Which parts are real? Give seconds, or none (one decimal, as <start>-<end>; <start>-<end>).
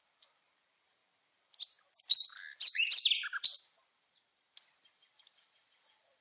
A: 0.0-6.2